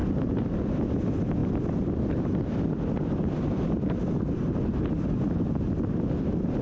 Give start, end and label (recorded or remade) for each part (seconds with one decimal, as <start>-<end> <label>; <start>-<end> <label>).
0.0-6.6 recorded

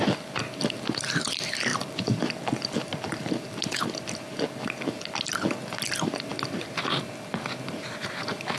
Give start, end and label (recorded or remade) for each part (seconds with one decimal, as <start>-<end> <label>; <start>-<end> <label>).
0.0-1.7 recorded; 1.7-3.8 remade; 3.8-8.6 recorded

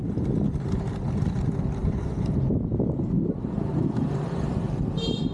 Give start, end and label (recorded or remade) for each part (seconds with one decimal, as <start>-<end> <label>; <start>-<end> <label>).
0.0-1.8 recorded; 1.8-5.3 remade

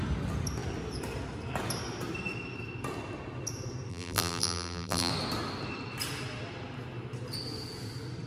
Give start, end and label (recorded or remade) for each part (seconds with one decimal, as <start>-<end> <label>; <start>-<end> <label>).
0.0-3.9 recorded; 3.9-5.1 remade; 5.1-8.3 recorded